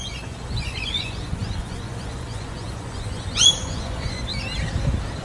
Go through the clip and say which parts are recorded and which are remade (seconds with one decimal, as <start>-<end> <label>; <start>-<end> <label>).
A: 0.0-4.3 remade; 4.3-5.2 recorded